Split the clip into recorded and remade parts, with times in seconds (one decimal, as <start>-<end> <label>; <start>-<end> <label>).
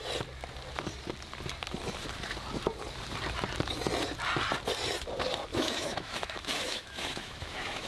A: 0.0-5.5 recorded; 5.5-7.9 remade